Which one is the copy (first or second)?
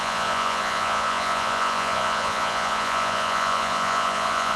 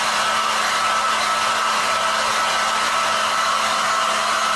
first